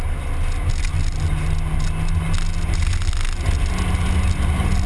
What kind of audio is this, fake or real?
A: real